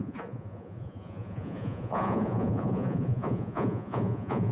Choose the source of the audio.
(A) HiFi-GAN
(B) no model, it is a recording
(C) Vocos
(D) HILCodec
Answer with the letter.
C